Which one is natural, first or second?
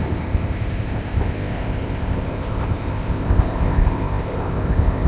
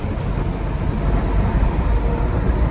second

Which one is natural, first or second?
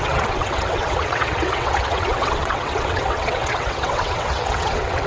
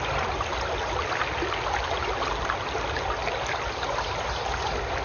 second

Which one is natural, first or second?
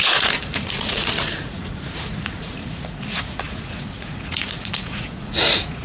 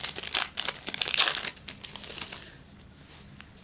second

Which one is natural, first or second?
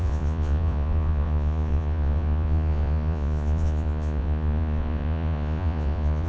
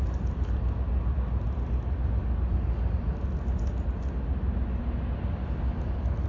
second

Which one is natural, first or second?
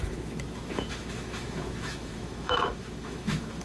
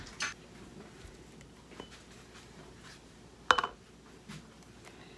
second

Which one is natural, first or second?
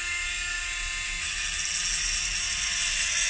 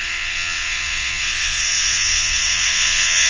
first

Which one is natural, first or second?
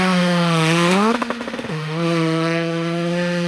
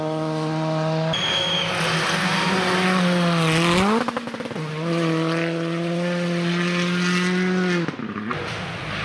second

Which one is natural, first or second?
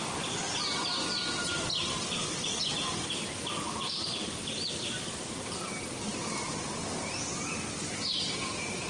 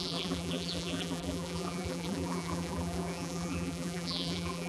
first